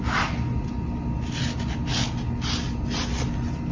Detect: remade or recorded recorded